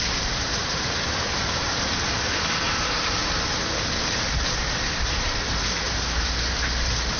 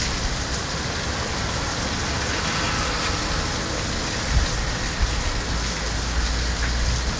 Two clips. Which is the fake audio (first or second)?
first